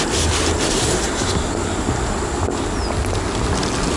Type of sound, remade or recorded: recorded